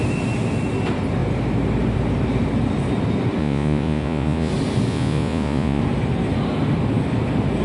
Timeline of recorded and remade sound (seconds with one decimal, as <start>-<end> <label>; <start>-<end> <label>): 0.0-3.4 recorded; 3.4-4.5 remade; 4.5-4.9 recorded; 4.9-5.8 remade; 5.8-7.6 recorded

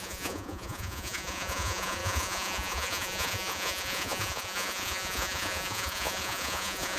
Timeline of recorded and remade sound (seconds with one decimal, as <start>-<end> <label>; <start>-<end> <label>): 0.0-7.0 remade

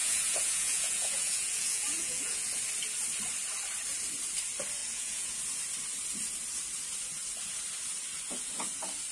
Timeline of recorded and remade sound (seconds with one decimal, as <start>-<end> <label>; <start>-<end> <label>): 0.0-2.5 remade; 2.5-4.8 recorded; 4.8-5.4 remade; 5.4-9.1 recorded

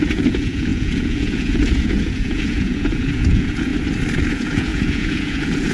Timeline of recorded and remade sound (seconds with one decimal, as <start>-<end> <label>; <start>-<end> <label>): 0.0-3.7 remade; 3.7-4.3 recorded; 4.3-5.7 remade